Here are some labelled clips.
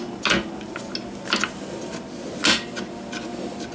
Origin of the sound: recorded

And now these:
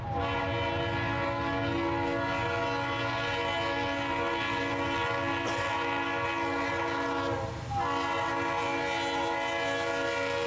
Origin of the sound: recorded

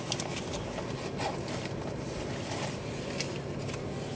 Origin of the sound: recorded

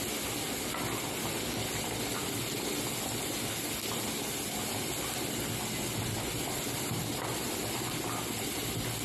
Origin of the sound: recorded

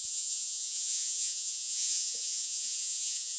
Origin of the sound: remade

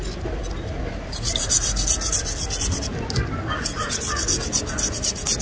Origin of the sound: recorded